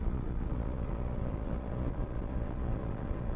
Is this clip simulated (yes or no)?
yes